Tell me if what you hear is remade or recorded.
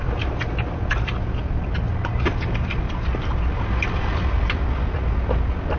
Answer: recorded